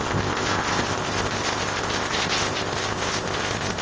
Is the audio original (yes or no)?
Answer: no